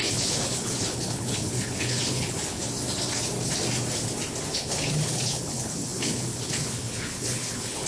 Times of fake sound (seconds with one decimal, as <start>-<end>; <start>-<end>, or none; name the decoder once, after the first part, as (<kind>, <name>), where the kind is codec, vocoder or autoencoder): 0.0-2.6 (codec, HILCodec); 4.5-7.9